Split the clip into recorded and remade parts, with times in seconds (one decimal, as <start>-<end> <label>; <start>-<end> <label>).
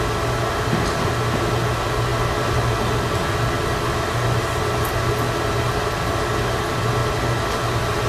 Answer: 0.0-8.1 recorded